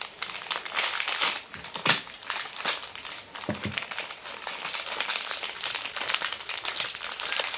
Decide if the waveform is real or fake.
real